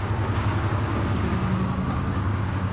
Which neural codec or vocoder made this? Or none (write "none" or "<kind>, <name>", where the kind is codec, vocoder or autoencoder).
codec, DAC